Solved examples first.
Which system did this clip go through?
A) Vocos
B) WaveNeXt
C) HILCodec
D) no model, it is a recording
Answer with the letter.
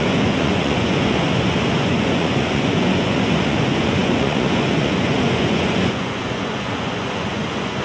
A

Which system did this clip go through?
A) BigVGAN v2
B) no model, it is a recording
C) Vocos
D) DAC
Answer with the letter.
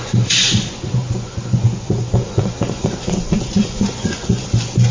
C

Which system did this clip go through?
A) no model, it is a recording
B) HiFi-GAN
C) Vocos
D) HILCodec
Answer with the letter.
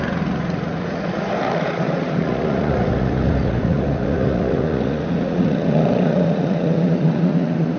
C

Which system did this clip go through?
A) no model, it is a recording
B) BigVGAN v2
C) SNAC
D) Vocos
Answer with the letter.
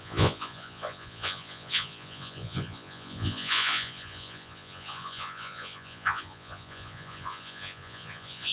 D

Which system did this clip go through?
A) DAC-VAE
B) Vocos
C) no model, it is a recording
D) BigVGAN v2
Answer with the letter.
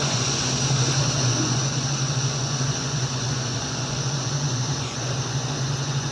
B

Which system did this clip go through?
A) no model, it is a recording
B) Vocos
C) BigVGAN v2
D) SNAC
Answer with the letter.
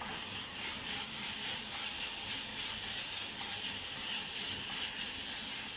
A